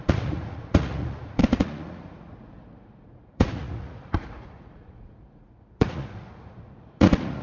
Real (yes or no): no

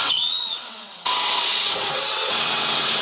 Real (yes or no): no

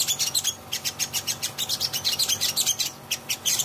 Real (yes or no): yes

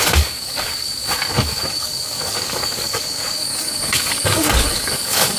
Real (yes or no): no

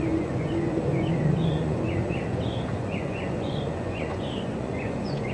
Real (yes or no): no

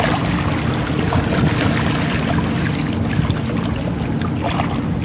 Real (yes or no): yes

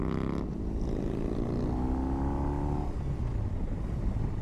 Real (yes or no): yes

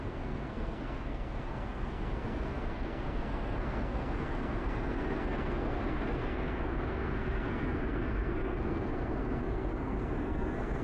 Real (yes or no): no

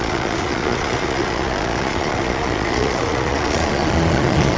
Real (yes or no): no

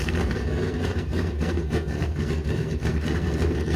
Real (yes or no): no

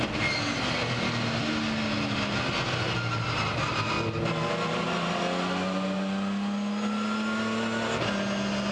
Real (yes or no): yes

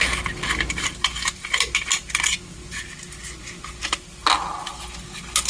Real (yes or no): yes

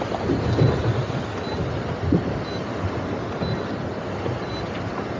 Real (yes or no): yes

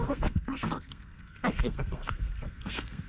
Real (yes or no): no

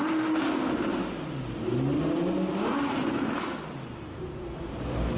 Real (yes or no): yes